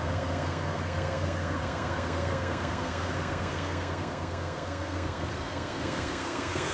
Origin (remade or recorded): remade